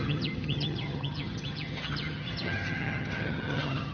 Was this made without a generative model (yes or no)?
no